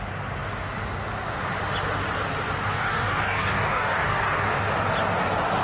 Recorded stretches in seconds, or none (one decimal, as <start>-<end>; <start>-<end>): 0.0-2.7; 4.4-5.6

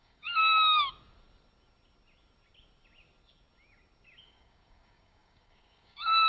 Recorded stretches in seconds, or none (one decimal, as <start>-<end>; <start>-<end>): 0.4-4.2

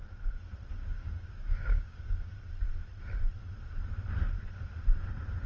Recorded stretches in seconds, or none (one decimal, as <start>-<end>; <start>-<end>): 0.0-0.8; 2.3-5.5

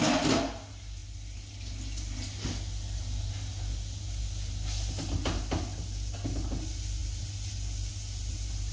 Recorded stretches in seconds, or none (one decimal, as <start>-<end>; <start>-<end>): 0.0-8.7

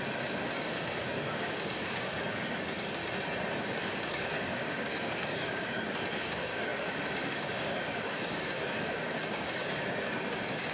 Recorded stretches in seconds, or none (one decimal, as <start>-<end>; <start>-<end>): 3.0-3.6